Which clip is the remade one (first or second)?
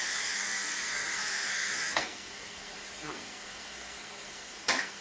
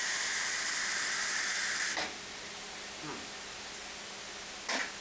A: first